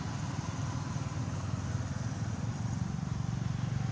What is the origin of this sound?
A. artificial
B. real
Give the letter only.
B